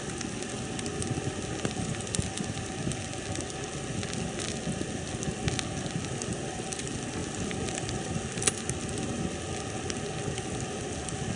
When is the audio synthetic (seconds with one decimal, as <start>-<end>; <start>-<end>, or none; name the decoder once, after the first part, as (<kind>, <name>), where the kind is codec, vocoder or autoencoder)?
none